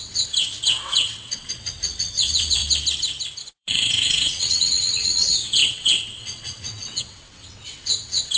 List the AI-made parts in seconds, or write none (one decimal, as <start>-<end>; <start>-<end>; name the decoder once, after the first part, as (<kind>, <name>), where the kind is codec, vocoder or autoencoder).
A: 0.0-2.6 (vocoder, WaveNeXt); 3.4-8.4